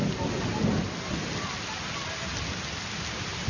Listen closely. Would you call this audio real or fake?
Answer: real